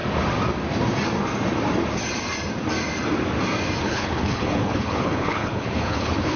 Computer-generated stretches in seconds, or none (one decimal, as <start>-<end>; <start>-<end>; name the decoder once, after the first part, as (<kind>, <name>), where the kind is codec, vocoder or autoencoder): 3.8-6.4 (codec, HILCodec)